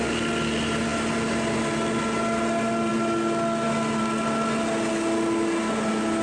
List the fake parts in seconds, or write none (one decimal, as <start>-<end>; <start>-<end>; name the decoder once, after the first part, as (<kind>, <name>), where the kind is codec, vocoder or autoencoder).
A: none